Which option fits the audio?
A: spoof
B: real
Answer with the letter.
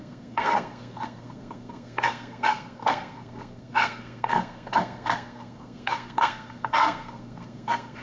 A